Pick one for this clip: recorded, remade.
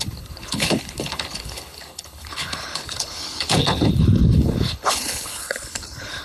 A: remade